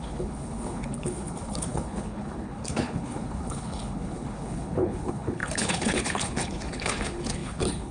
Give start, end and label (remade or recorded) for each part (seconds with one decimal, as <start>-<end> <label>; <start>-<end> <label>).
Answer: 0.0-7.9 remade